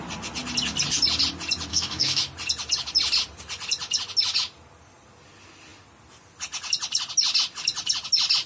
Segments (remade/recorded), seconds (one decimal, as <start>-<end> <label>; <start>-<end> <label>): 0.0-1.7 recorded; 1.7-2.2 remade; 2.2-8.5 recorded